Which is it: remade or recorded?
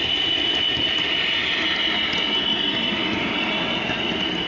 recorded